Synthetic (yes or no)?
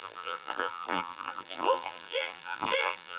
yes